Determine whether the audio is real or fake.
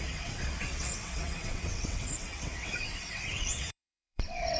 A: fake